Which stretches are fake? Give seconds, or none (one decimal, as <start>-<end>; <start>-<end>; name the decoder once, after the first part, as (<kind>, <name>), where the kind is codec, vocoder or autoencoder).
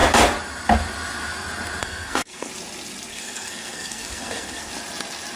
1.8-2.5 (codec, SNAC); 3.1-4.7